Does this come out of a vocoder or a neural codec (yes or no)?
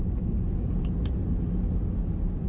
no